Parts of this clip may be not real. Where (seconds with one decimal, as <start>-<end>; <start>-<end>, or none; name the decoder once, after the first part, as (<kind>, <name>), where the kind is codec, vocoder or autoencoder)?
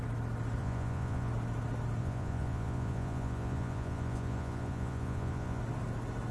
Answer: 0.6-1.3 (vocoder, Vocos); 2.0-5.6